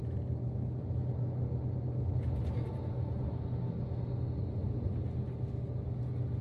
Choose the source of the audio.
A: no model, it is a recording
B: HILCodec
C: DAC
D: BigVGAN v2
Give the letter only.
A